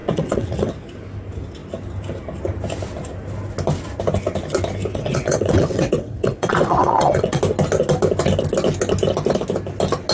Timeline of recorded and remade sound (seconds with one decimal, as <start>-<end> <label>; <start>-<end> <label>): 0.0-0.7 remade; 0.7-4.9 recorded; 4.9-7.4 remade; 7.4-10.1 recorded